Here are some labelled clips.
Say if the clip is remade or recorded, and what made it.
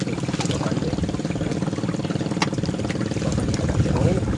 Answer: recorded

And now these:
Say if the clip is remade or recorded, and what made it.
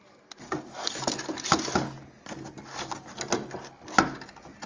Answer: recorded